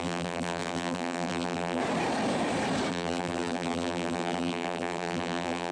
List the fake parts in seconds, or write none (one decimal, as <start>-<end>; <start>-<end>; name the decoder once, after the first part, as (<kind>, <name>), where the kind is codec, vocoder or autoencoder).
0.0-1.8 (vocoder, BigVGAN v2); 2.9-5.7